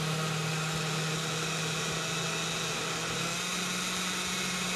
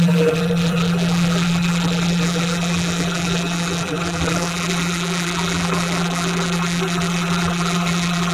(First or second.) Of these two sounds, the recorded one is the first